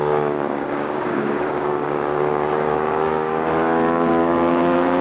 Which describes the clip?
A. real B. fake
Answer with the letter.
B